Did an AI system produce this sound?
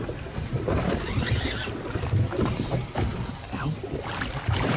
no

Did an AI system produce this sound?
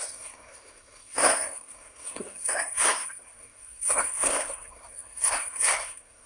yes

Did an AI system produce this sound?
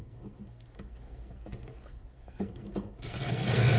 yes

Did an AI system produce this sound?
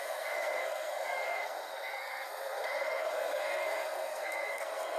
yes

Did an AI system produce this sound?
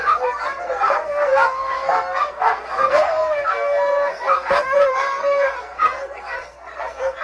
yes